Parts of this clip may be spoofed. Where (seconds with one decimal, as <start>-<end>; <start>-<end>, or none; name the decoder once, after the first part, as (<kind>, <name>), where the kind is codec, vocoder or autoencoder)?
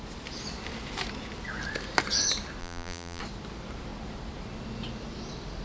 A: 2.6-3.2 (vocoder, BigVGAN v2)